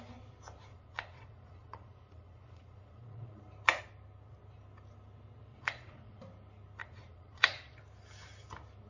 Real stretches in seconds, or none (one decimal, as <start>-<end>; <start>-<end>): 0.0-0.7; 3.4-5.5; 6.2-6.8; 7.8-8.9